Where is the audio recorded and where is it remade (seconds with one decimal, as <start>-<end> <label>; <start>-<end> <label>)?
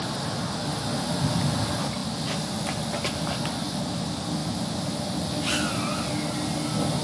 0.0-7.0 recorded